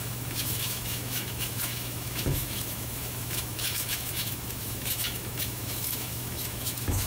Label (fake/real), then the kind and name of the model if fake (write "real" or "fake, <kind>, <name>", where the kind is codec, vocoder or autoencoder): fake, autoencoder, DAC-VAE